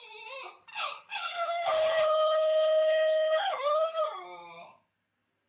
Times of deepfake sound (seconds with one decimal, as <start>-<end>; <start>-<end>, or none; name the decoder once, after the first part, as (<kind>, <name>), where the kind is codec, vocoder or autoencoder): 0.7-4.0 (codec, HILCodec)